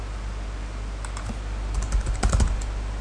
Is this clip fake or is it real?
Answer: real